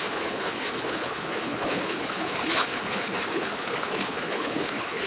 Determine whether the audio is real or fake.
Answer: fake